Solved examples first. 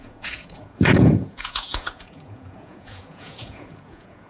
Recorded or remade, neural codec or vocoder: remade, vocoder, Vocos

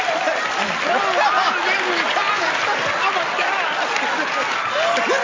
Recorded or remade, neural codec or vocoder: recorded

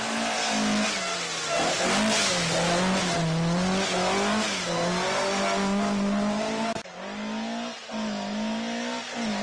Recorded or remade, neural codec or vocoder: recorded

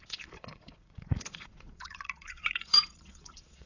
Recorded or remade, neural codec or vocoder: remade, vocoder, Vocos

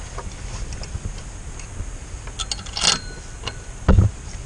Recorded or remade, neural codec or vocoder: recorded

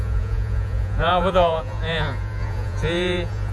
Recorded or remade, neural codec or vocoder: remade, vocoder, Vocos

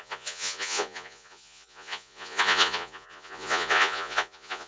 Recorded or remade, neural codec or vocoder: remade, vocoder, Vocos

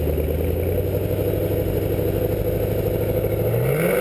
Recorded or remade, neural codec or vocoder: recorded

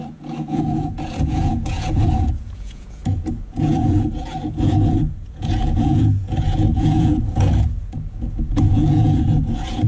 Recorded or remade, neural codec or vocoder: remade, vocoder, Vocos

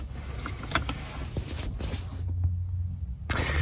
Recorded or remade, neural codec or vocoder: recorded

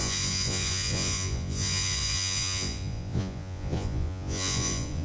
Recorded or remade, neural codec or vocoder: remade, vocoder, Vocos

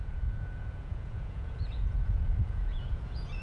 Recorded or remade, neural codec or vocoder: remade, vocoder, Vocos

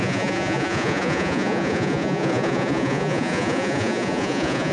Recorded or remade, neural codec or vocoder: remade, vocoder, Vocos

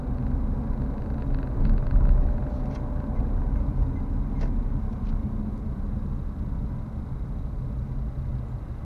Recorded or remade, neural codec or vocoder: recorded